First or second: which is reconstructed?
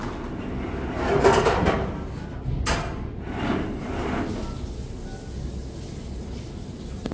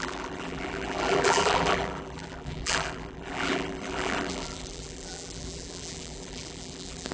second